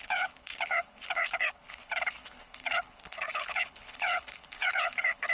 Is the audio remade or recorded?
remade